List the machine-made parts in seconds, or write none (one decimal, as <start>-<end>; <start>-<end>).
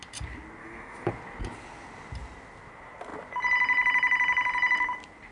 0.6-1.1